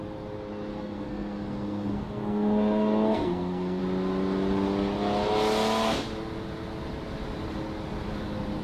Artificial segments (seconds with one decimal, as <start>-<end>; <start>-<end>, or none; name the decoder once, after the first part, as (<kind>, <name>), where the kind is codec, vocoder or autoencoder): 0.7-3.8 (codec, SNAC)